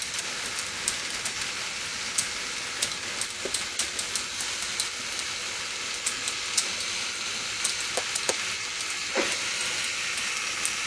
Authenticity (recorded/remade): recorded